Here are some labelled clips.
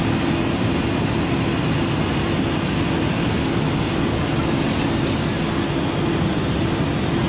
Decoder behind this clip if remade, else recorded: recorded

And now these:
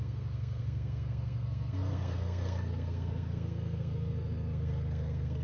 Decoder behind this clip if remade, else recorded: remade, codec, SNAC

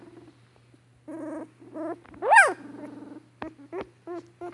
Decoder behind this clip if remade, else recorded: recorded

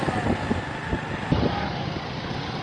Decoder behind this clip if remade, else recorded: recorded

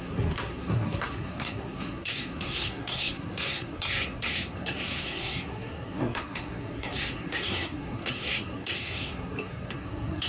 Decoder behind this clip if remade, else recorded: remade, codec, SNAC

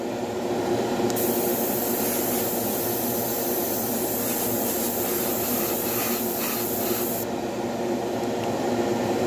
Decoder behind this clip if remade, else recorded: recorded